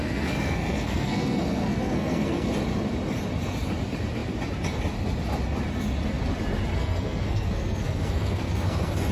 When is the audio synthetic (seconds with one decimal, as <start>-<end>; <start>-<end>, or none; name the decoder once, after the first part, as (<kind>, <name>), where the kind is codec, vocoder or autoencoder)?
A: 0.0-2.5 (codec, SNAC); 6.7-9.1